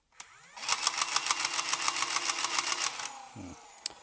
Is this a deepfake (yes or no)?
no